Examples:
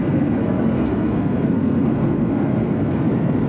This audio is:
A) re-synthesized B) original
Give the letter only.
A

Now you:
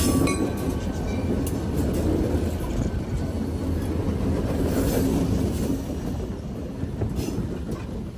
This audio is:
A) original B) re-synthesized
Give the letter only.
A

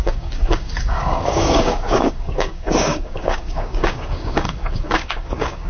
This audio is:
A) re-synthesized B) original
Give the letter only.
A